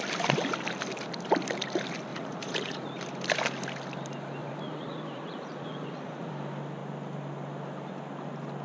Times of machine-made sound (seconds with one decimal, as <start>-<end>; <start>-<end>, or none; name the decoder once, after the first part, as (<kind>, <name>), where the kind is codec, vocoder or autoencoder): 2.1-3.0 (vocoder, Vocos); 4.4-6.3